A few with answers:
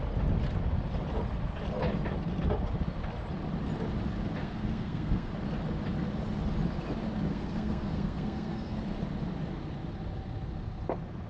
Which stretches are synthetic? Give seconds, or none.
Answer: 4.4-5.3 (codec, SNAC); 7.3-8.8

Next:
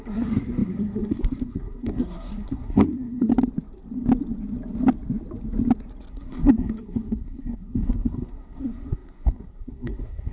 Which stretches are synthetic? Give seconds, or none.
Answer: 0.0-3.3 (codec, SNAC); 6.1-10.3

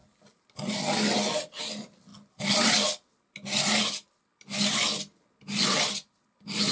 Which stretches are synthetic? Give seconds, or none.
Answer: none